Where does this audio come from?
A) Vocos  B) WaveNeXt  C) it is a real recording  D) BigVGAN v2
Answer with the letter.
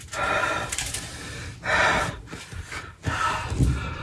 C